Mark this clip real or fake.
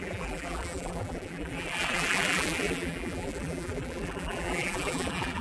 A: fake